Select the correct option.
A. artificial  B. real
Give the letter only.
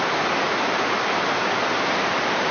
B